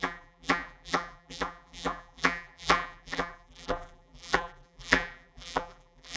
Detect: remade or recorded remade